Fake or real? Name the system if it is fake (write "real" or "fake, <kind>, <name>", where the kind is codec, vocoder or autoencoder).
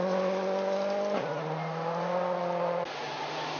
real